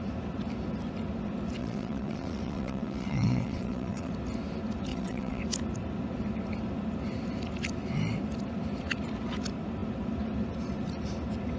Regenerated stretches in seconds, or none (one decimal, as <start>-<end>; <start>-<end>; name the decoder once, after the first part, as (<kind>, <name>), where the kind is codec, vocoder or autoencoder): 1.6-4.1 (vocoder, WaveNeXt); 4.9-5.4